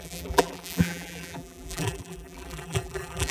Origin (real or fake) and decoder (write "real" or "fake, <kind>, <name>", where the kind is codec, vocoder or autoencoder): fake, vocoder, BigVGAN v2